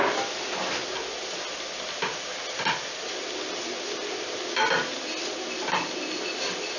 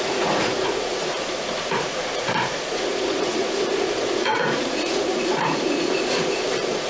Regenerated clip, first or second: second